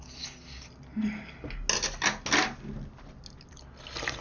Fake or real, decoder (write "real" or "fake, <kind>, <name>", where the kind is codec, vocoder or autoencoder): real